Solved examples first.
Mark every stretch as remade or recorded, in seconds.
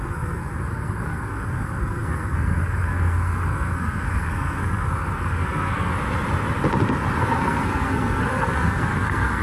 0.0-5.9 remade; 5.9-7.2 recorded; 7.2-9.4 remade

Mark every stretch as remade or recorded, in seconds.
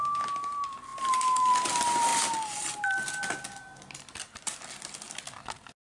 0.0-5.8 recorded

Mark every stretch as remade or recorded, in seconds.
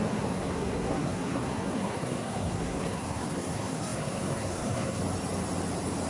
0.0-5.0 remade; 5.0-6.1 recorded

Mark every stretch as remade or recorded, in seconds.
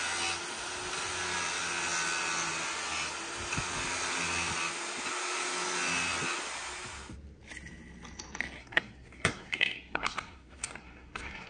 0.0-8.6 recorded; 8.6-11.5 remade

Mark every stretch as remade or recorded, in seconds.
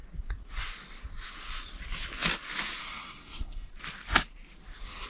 0.0-2.8 recorded; 2.8-3.7 remade; 3.7-5.1 recorded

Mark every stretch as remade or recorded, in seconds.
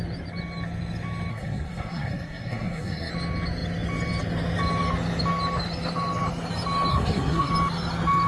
0.0-1.3 recorded; 1.3-3.1 remade; 3.1-6.9 recorded; 6.9-7.5 remade; 7.5-8.3 recorded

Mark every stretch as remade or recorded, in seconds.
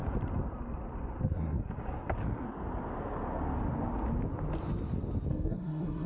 0.0-1.2 recorded; 1.2-1.6 remade; 1.6-5.3 recorded; 5.3-6.1 remade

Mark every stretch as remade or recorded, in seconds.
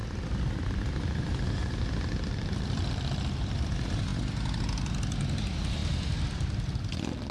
0.0-7.3 recorded